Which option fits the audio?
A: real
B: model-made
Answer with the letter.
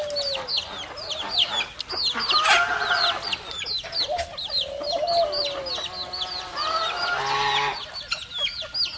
A